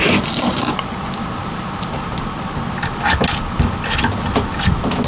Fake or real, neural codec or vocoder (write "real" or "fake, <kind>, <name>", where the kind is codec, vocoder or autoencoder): real